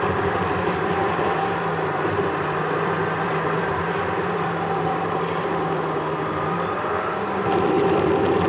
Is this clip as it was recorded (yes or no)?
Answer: no